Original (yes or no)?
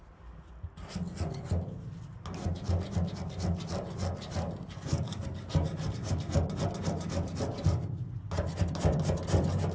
yes